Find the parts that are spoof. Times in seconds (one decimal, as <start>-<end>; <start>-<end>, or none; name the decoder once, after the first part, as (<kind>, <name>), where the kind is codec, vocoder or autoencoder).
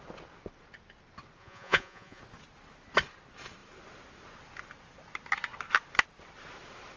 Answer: 1.4-2.2 (vocoder, Vocos)